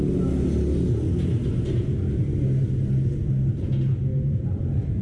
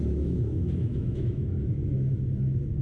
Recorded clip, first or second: first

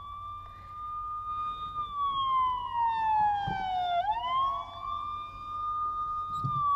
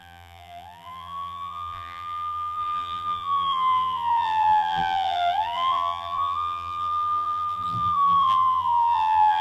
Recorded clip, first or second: first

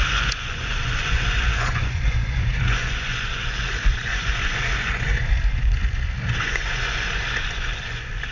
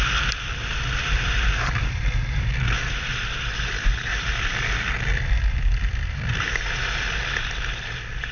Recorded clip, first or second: second